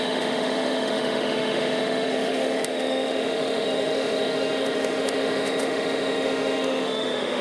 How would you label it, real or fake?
fake